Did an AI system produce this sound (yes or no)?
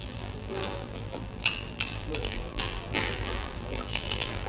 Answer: yes